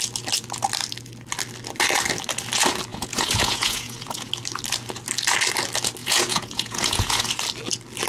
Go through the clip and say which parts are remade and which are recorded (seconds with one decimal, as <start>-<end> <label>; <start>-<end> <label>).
0.0-2.9 recorded; 2.9-4.3 remade; 4.3-6.0 recorded; 6.0-7.3 remade; 7.3-8.1 recorded